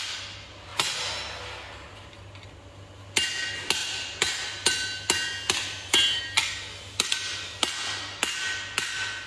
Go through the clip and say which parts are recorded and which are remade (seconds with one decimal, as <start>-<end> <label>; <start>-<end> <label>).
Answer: 0.0-9.3 recorded